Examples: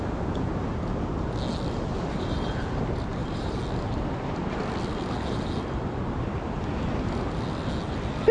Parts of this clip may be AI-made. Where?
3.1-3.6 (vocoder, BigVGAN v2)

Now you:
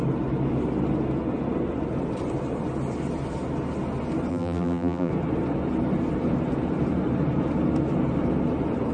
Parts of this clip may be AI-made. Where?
4.3-5.1 (vocoder, BigVGAN v2)